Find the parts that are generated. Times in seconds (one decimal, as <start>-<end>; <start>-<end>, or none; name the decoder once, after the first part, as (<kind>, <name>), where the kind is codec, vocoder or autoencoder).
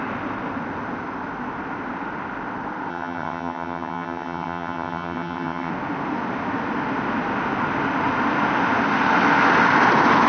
2.9-5.7 (vocoder, HiFi-GAN)